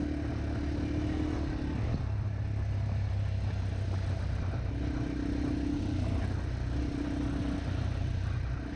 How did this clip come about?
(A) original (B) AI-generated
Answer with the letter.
A